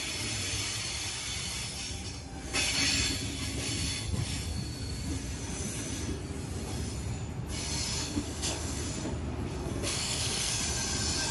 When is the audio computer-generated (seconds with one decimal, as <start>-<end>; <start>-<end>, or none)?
8.0-8.8; 9.6-10.6